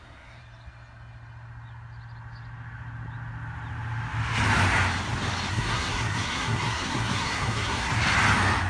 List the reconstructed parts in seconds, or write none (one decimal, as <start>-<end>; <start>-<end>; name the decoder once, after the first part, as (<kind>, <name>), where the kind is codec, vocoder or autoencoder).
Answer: 0.0-0.4 (codec, SNAC); 5.5-7.9